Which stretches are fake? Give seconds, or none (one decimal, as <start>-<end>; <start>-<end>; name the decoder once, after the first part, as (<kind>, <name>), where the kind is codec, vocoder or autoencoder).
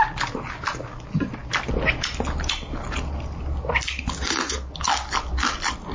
none